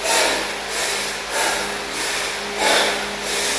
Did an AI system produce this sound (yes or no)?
no